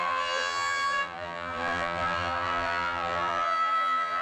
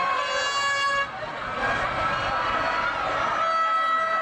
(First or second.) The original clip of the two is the second